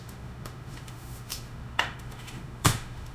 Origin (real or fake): fake